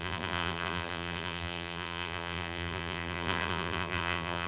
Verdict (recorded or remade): remade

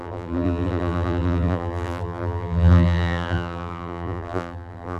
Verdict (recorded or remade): remade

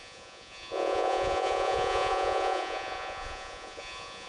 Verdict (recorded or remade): remade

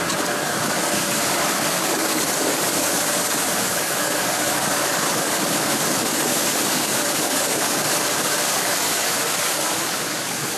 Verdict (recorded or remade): remade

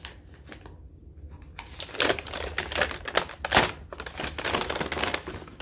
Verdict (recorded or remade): recorded